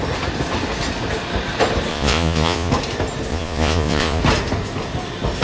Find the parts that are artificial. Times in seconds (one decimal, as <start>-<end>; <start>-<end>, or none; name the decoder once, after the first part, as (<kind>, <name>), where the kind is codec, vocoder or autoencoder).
1.9-2.7 (vocoder, Vocos); 3.3-4.2